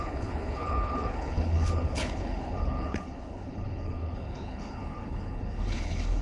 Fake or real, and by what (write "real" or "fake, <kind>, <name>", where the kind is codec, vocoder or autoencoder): fake, codec, HILCodec